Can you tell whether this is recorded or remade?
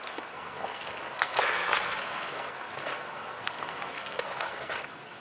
remade